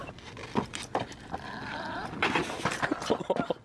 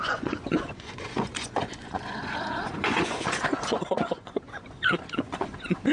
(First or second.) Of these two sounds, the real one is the first